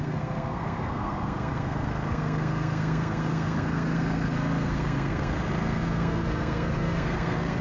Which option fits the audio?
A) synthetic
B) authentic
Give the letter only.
A